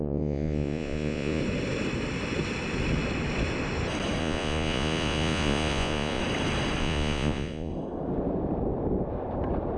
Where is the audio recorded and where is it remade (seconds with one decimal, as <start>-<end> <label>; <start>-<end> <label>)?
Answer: 0.0-1.4 remade; 1.4-4.2 recorded; 4.2-6.2 remade; 6.2-6.8 recorded; 6.8-7.7 remade; 7.7-9.8 recorded